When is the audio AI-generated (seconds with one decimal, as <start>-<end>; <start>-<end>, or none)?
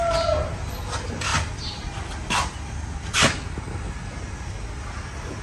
none